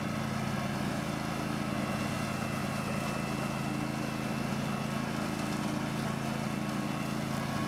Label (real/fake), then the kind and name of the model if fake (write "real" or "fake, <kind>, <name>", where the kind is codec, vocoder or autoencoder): real